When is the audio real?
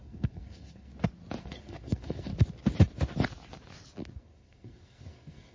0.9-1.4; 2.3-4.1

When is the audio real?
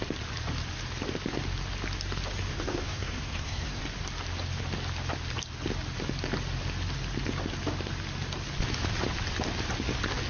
0.0-2.5; 3.8-10.3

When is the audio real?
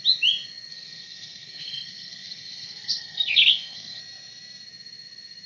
0.0-0.7; 4.0-5.5